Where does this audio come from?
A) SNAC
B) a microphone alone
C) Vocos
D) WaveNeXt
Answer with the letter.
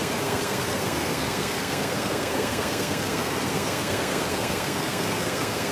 A